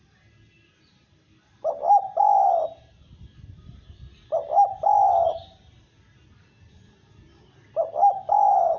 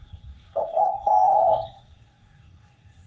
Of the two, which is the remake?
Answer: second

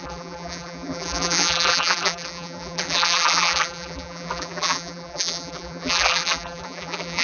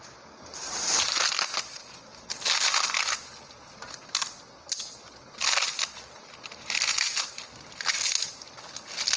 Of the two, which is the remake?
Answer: first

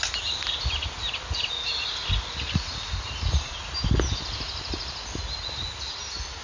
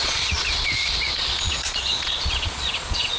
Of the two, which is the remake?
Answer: second